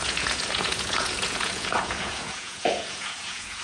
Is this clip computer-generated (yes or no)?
yes